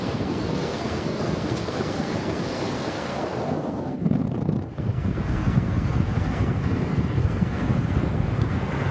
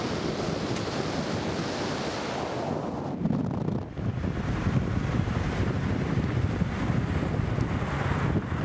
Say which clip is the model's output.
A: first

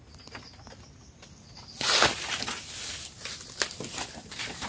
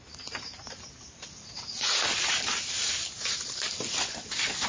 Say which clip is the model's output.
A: second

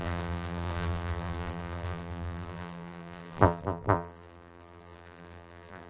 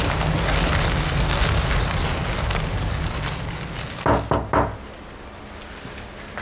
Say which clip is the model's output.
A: first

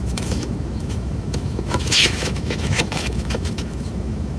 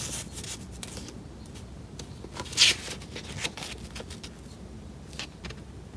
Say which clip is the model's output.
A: first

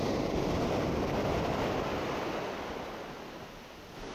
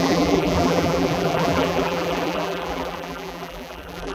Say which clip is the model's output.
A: second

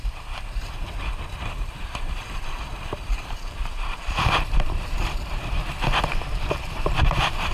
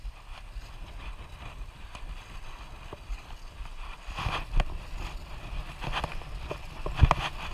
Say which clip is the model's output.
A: first